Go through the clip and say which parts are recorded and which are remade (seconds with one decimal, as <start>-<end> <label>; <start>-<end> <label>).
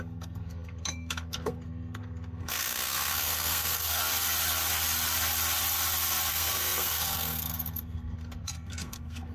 0.0-4.0 remade; 4.0-6.3 recorded; 6.3-9.3 remade